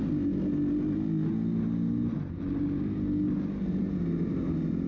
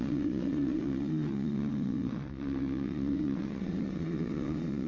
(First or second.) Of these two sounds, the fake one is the second